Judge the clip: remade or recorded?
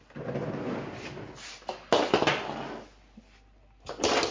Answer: recorded